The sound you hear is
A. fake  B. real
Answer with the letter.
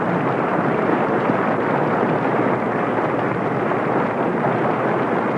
B